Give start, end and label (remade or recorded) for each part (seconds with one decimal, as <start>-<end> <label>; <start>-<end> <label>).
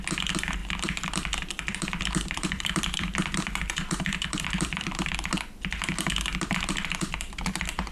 0.0-0.6 recorded; 0.6-5.3 remade; 5.3-6.3 recorded; 6.3-7.9 remade